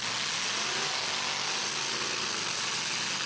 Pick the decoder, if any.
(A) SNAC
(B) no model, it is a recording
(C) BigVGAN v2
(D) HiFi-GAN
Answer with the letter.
B